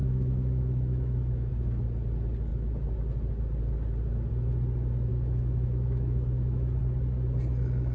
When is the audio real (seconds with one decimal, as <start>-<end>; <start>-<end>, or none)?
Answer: 1.5-5.1; 6.8-7.9